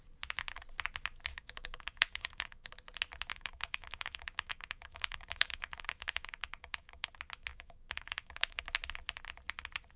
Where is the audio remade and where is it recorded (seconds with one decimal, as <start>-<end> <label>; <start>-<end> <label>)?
0.0-1.3 recorded; 1.3-2.7 remade; 2.7-3.3 recorded; 3.3-7.1 remade; 7.1-7.5 recorded; 7.5-8.6 remade; 8.6-10.0 recorded